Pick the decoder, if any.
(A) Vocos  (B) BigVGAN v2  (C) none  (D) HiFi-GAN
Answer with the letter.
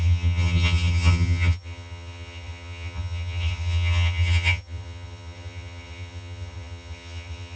D